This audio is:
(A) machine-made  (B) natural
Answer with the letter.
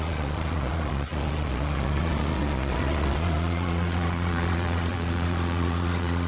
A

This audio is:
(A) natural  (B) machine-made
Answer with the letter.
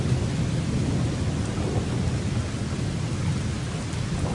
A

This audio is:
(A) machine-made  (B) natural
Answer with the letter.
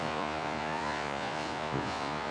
A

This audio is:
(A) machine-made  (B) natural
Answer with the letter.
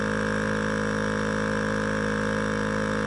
B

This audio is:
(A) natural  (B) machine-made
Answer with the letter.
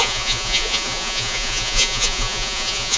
B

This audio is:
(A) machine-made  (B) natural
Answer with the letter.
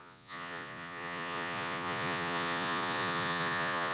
A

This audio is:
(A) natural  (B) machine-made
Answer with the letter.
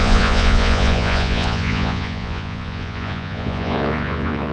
B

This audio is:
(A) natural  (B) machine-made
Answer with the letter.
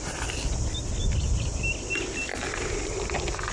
A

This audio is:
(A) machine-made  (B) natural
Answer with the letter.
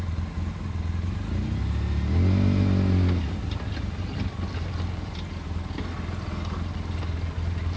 B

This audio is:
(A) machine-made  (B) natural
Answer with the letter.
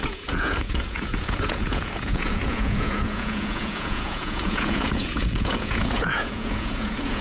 A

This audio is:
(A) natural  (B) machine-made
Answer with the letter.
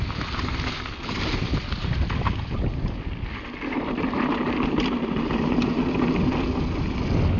A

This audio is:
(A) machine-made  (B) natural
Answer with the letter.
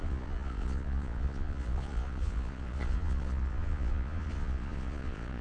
A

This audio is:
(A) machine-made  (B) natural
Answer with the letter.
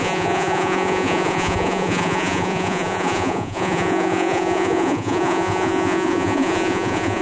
A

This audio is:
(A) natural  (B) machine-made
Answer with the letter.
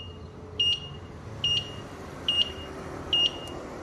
A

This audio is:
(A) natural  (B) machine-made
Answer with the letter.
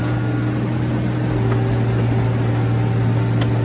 A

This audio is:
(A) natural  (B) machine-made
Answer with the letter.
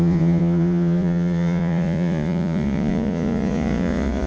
B